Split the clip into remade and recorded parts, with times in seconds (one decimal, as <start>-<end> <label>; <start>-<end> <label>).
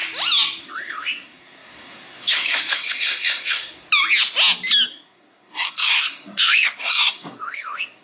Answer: 0.0-0.6 recorded; 0.6-3.9 remade; 3.9-4.9 recorded; 4.9-8.0 remade